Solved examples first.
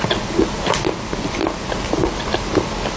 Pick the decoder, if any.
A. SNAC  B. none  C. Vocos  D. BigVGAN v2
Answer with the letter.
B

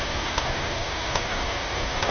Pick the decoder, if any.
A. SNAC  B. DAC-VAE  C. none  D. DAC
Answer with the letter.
D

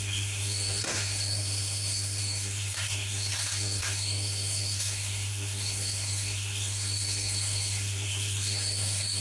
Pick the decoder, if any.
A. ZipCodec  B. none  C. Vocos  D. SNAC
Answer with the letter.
D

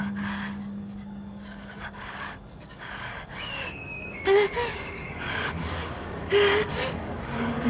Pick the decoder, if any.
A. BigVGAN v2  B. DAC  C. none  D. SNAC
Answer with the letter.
B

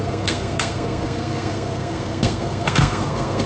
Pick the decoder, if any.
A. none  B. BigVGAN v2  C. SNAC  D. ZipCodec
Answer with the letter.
C